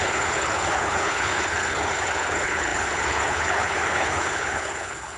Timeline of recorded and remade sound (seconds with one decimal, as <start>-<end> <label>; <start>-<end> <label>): 0.0-5.2 remade